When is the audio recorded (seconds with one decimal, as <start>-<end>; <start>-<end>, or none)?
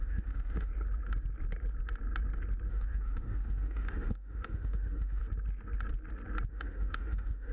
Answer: 0.7-2.7; 5.2-6.5